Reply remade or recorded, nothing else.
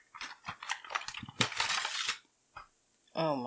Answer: recorded